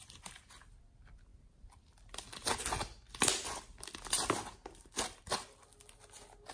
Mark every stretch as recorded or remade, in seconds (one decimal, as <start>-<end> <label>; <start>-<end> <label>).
0.0-6.5 recorded